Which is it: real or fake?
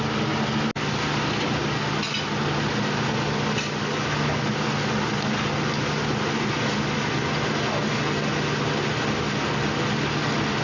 real